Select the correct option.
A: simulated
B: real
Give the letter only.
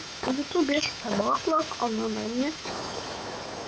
A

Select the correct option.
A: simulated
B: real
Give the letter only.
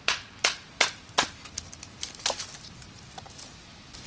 B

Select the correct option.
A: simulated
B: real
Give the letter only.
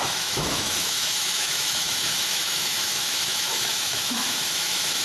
A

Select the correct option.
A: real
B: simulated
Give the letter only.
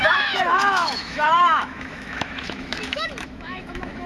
B